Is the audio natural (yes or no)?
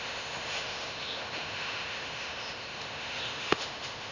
no